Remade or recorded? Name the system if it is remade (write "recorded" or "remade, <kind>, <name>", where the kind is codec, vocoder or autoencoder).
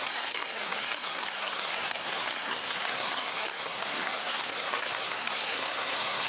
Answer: remade, codec, SNAC